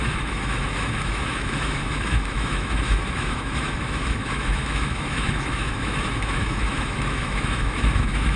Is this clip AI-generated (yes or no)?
yes